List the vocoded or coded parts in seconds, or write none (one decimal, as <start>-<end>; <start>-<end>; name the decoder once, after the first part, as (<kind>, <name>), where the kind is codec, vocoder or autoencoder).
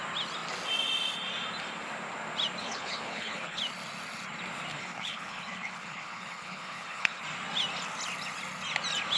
2.6-3.6 (codec, HILCodec); 4.7-7.2